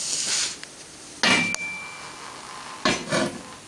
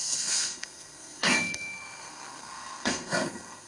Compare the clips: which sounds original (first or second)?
first